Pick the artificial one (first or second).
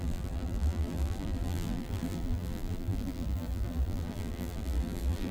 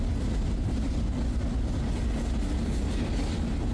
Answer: first